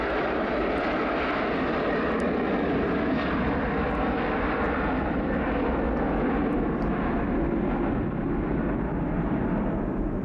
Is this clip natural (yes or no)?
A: yes